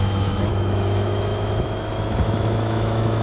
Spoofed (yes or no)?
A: yes